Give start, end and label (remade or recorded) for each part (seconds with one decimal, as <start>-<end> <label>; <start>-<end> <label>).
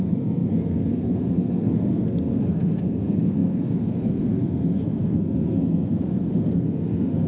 0.0-7.3 remade